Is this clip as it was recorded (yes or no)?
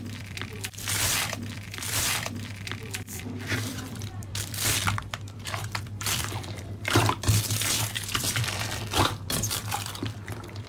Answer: no